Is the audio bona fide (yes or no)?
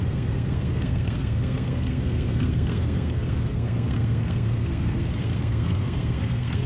no